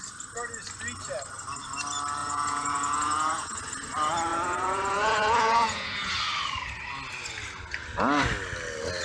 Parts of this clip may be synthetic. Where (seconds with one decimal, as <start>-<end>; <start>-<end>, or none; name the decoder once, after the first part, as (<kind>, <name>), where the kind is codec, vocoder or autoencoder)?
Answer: 2.2-3.7 (vocoder, Vocos); 4.3-6.1